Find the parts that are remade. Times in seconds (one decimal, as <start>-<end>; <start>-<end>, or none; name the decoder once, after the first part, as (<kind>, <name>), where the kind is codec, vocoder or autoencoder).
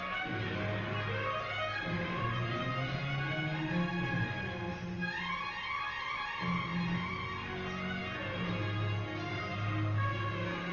1.7-2.7 (vocoder, BigVGAN v2)